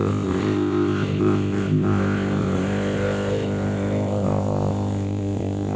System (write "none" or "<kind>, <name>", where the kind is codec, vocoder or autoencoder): codec, ZipCodec